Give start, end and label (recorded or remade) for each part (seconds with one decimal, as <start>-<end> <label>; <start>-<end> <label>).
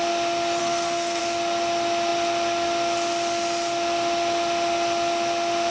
0.0-0.6 recorded; 0.6-1.2 remade; 1.2-5.7 recorded